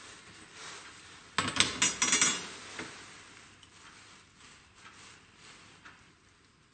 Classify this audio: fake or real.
real